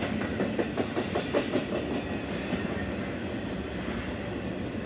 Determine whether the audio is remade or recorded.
recorded